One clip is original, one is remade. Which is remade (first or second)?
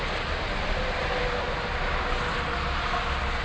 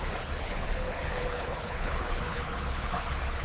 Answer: second